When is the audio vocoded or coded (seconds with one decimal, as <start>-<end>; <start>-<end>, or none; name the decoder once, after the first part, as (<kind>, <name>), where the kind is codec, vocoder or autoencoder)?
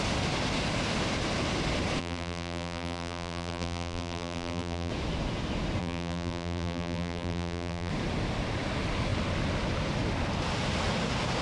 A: 2.0-4.9 (vocoder, BigVGAN v2); 5.8-7.9